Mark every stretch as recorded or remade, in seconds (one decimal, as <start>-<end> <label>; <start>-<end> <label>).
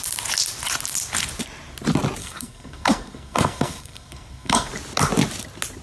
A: 0.0-2.2 recorded; 2.2-4.7 remade; 4.7-5.8 recorded